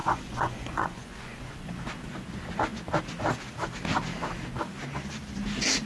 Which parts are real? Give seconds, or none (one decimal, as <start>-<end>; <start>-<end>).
1.9-5.9